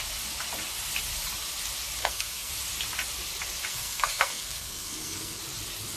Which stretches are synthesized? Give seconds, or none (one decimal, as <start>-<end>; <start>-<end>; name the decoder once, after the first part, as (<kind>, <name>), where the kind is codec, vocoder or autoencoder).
2.0-2.5 (codec, SNAC); 3.7-5.4